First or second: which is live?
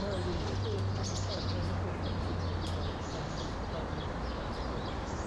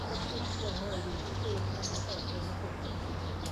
first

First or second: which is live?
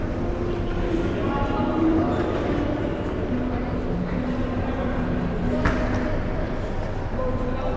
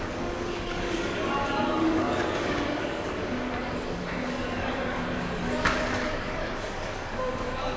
first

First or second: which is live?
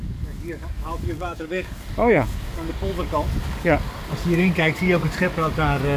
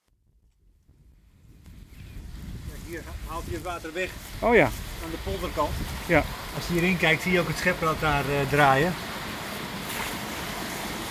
second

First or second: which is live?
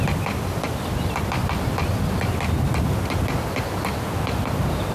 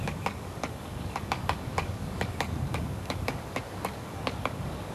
first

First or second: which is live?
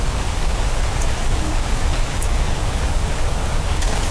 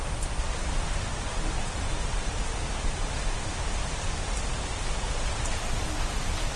second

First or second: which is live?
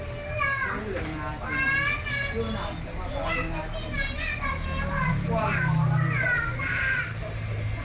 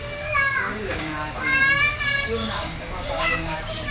first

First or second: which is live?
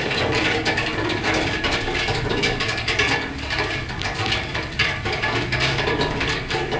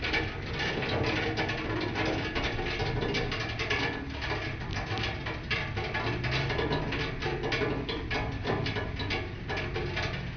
second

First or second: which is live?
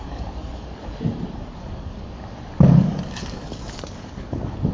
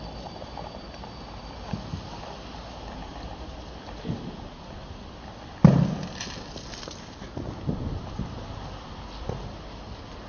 second